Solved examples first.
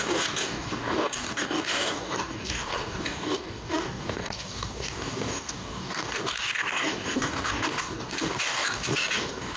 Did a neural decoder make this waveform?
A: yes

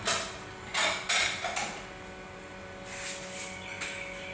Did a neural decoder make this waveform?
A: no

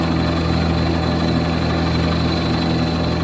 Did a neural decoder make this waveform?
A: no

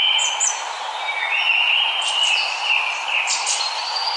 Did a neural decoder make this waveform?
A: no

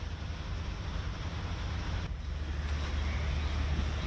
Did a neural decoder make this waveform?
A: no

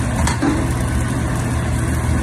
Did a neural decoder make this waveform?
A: no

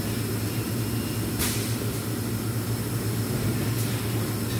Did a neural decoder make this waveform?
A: no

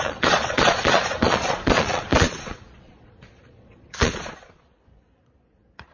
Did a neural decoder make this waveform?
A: yes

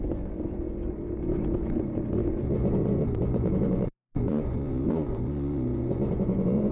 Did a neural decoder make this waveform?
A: yes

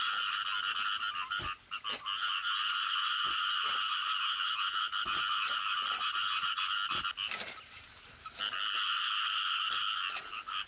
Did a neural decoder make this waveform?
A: no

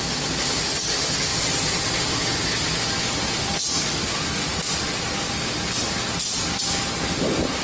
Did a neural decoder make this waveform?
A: no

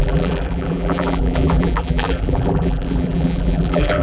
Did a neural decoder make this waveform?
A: yes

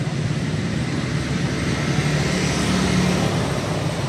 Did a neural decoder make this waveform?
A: no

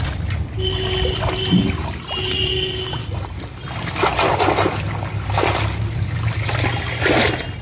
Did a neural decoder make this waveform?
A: no